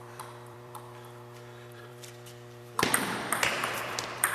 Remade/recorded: remade